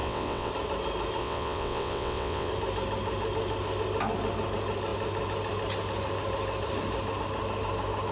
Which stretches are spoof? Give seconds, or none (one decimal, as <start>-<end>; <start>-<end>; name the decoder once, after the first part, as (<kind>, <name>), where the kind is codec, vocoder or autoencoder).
0.0-0.5 (vocoder, WaveNeXt); 1.2-2.5